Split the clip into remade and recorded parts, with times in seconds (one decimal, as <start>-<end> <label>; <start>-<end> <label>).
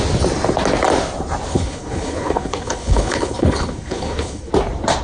0.0-1.5 recorded; 1.5-4.5 remade; 4.5-5.0 recorded